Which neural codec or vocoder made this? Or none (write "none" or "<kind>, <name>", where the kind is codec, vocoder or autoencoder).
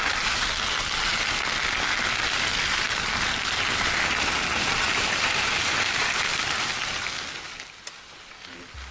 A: none